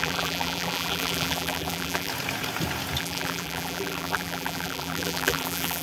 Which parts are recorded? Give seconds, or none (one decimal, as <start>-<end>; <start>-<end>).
2.1-3.0